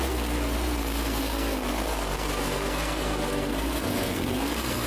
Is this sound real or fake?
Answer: fake